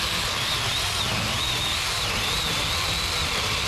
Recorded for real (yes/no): yes